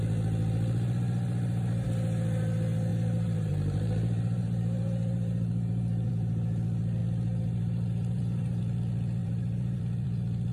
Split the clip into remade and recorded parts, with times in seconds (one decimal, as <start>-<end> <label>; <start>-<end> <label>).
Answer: 0.0-2.9 recorded; 2.9-6.1 remade; 6.1-7.0 recorded; 7.0-8.6 remade; 8.6-9.2 recorded; 9.2-9.8 remade; 9.8-10.5 recorded